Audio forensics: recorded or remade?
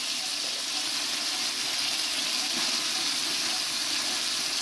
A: recorded